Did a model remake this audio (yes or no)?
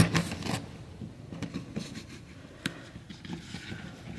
no